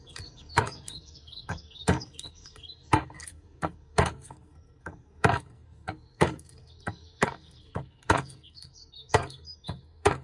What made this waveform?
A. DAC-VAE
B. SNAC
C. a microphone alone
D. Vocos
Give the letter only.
B